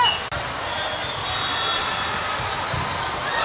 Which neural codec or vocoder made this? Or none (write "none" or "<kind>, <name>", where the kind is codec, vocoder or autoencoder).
none